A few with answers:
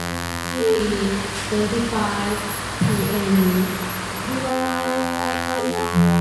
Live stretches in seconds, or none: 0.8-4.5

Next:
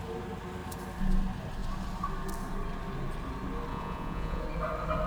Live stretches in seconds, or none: 0.0-3.7; 4.4-5.1